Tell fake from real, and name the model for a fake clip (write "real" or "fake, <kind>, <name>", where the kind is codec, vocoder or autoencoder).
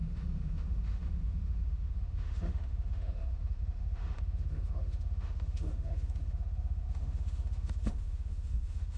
fake, autoencoder, DAC-VAE